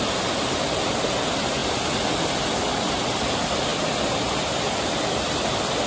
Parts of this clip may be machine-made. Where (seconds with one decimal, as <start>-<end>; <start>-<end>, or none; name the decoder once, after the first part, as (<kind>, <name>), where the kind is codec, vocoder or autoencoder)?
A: none